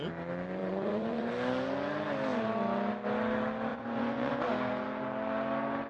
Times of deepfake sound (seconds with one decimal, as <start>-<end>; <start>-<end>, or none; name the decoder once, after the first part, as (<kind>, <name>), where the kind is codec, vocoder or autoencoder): 0.6-1.3 (vocoder, Vocos); 3.7-4.3